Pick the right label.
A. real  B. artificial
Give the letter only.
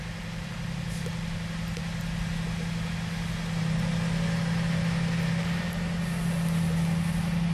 A